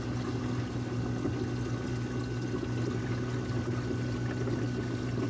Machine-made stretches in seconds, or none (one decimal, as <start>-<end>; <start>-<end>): none

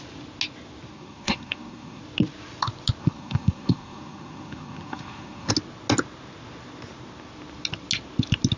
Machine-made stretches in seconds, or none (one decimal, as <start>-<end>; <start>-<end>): 0.9-2.0; 3.0-5.5

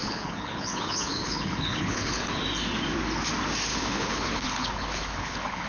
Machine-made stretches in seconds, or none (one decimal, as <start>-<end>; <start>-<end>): 0.0-2.4; 3.7-5.7

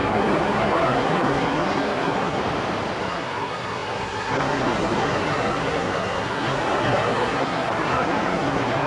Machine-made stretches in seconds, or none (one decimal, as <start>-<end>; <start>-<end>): 0.0-2.4; 3.0-8.9

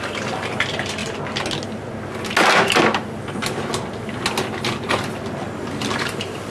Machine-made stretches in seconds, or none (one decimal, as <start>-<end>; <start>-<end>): 0.0-1.0; 4.9-6.5

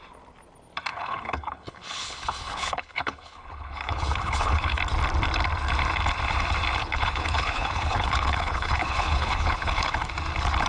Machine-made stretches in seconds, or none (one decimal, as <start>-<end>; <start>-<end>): 0.9-4.8; 6.8-10.1